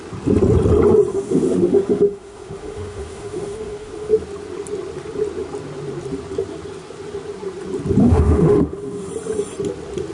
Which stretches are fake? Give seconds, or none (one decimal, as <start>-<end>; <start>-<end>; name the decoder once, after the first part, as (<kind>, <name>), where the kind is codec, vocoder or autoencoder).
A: 1.1-4.1 (autoencoder, DAC-VAE); 8.0-9.1